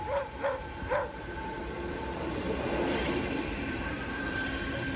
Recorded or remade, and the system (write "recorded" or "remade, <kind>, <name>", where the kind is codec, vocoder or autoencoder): remade, vocoder, BigVGAN v2